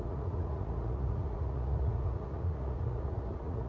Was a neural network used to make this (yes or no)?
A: yes